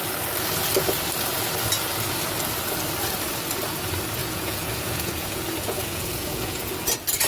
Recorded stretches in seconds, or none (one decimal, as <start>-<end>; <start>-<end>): 0.0-4.2; 6.7-7.3